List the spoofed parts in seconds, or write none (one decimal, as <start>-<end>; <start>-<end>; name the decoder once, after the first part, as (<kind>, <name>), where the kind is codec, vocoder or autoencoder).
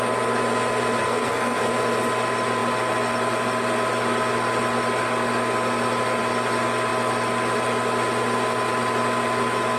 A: 1.0-1.6 (codec, SNAC)